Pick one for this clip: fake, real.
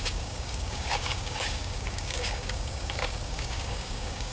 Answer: fake